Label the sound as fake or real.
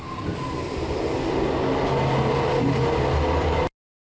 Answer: real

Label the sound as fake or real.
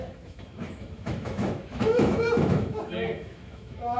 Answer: fake